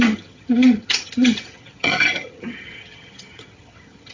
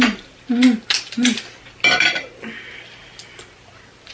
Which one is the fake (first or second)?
first